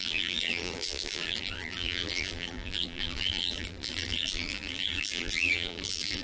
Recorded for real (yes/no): no